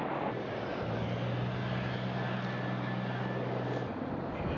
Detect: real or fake real